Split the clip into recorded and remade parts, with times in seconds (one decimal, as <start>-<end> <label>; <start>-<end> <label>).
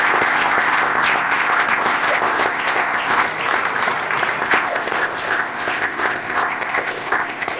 0.0-3.3 remade; 3.3-4.4 recorded; 4.4-7.6 remade